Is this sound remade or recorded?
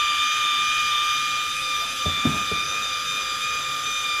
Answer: recorded